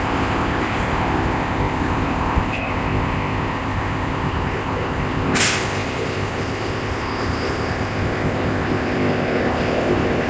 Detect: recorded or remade remade